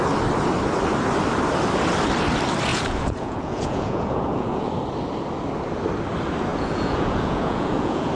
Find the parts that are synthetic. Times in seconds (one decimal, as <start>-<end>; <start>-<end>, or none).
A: 2.7-4.7; 6.5-8.1